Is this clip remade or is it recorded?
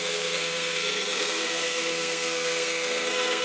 remade